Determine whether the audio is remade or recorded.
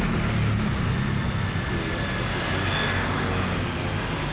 recorded